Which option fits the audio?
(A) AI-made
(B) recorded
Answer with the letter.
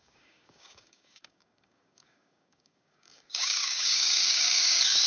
A